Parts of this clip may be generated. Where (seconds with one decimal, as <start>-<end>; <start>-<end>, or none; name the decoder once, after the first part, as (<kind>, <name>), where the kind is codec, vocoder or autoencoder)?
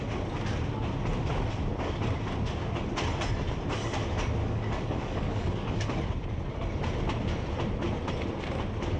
4.4-6.0 (codec, DAC)